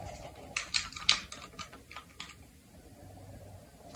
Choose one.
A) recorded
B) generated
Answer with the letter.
A